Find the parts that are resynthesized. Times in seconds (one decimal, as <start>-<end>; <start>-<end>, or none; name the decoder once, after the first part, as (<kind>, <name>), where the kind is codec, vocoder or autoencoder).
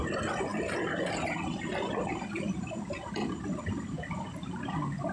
none